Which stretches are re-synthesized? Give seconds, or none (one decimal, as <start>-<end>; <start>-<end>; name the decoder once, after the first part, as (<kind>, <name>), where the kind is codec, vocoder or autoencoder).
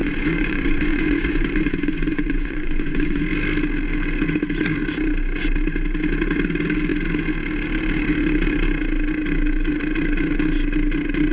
0.0-3.2 (vocoder, Vocos)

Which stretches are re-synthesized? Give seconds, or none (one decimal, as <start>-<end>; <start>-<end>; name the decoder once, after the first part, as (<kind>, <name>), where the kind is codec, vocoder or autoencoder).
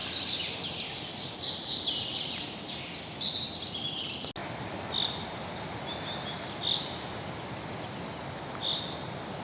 none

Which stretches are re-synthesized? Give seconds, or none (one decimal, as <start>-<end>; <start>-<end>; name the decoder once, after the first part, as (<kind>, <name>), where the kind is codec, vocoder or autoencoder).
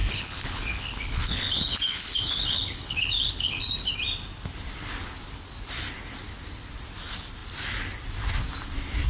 0.0-3.9 (codec, HILCodec)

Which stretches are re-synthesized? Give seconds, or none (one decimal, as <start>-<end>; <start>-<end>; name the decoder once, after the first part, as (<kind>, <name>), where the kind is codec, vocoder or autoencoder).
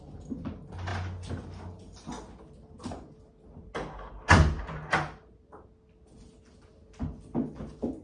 none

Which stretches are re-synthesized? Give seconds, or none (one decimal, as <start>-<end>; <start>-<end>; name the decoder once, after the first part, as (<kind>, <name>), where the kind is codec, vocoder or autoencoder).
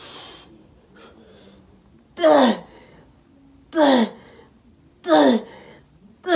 0.0-2.2 (vocoder, BigVGAN v2); 6.0-6.4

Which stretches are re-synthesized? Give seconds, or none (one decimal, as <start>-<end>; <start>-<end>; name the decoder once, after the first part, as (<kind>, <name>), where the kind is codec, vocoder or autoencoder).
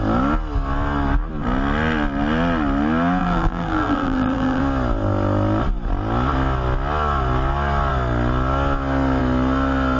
3.2-4.6 (vocoder, BigVGAN v2)